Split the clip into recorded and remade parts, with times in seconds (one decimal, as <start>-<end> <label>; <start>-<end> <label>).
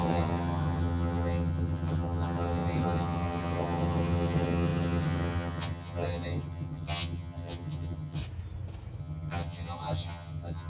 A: 0.0-8.2 remade; 8.2-9.0 recorded; 9.0-10.7 remade